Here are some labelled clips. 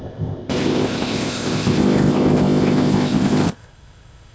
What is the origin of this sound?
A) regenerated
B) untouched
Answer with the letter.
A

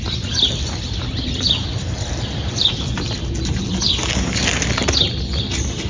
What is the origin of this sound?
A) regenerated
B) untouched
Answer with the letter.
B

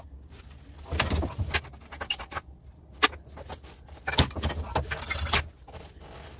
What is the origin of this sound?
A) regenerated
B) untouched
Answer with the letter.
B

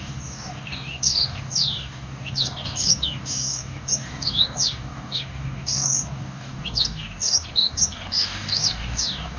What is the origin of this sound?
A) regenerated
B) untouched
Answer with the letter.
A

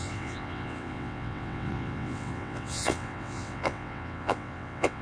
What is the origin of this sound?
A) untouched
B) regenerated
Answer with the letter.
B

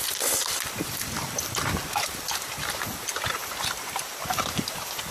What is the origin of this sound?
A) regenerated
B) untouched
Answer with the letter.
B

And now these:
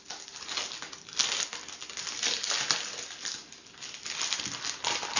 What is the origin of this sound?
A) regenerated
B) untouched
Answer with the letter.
B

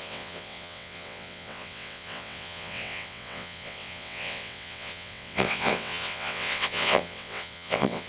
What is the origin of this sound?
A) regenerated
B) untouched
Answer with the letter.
A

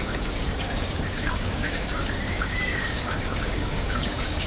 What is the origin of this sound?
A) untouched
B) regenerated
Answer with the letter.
B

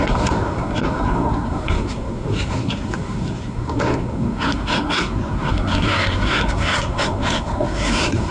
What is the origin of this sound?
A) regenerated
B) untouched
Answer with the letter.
A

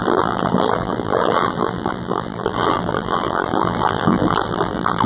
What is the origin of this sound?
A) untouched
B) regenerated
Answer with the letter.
B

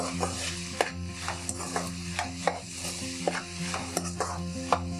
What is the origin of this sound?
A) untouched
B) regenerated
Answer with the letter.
A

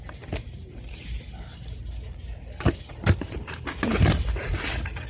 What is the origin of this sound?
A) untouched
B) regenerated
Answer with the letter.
A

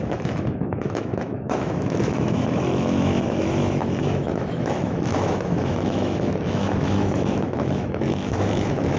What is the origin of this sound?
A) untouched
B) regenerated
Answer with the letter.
B